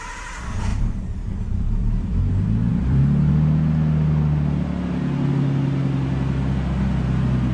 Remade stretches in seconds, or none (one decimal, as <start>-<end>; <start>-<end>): 0.7-2.2; 2.7-3.3